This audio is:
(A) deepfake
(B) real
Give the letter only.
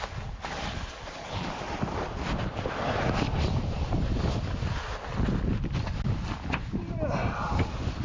B